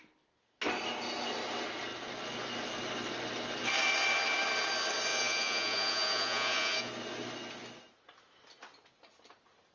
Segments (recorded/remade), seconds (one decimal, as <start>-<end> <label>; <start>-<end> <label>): 0.0-5.1 recorded; 5.1-6.9 remade; 6.9-9.7 recorded